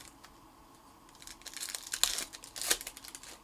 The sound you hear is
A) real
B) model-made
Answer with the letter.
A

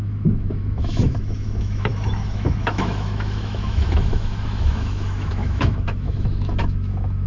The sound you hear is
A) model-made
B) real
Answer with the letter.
A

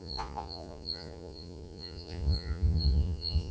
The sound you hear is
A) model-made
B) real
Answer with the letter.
A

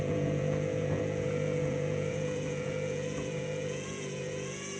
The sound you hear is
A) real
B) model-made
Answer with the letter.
B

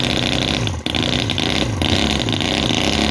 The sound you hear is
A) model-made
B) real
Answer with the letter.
B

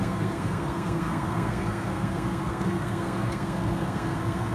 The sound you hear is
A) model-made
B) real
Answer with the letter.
A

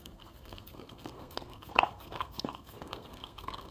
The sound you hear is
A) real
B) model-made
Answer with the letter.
B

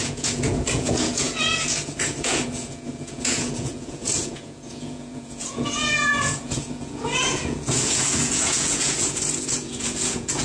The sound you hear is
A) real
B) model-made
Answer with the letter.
B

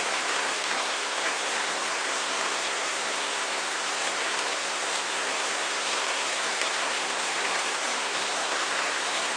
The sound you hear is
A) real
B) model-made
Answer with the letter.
B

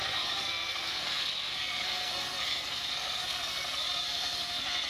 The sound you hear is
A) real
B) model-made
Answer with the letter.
B